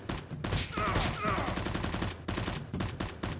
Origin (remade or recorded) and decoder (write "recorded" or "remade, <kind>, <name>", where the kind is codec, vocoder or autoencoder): recorded